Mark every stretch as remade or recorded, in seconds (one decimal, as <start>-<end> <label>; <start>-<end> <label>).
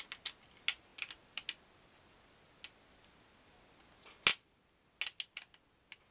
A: 0.0-6.1 recorded